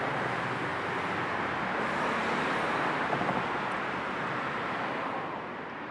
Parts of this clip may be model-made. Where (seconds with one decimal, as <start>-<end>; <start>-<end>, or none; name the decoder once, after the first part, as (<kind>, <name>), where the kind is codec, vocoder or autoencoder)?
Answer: none